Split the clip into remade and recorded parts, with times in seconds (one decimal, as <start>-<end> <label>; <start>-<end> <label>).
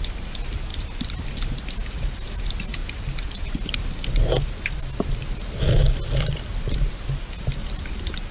0.0-8.3 recorded